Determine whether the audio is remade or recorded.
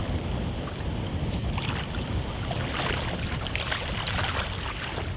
remade